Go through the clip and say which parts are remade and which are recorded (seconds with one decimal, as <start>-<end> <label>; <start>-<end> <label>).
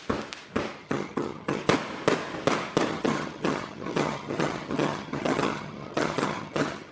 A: 0.0-0.8 recorded; 0.8-1.6 remade; 1.6-2.9 recorded; 2.9-6.9 remade